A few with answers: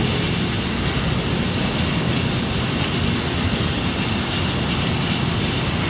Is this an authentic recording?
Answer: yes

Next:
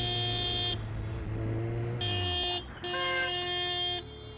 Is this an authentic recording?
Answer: yes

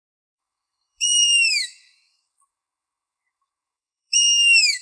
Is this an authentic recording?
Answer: no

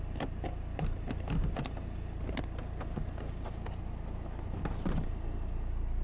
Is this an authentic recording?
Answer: yes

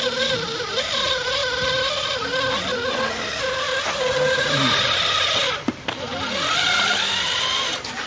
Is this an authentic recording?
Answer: yes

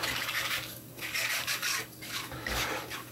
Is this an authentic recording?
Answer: no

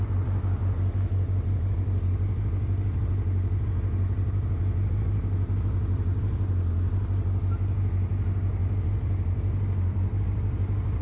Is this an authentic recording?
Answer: yes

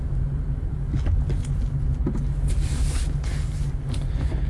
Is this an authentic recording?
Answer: yes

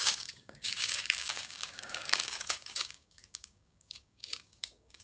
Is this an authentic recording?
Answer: no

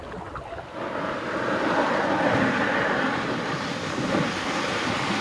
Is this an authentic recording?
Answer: yes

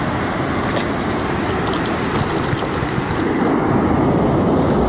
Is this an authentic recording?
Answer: yes